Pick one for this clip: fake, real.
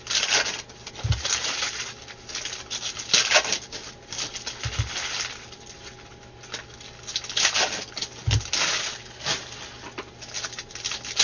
real